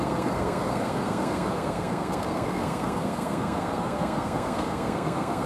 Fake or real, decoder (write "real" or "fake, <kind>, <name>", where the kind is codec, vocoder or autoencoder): fake, codec, SNAC